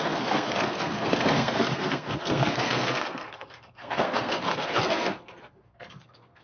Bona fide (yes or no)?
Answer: no